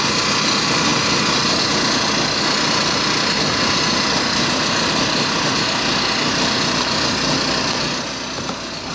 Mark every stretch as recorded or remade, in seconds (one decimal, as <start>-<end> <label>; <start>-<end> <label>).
0.0-8.9 recorded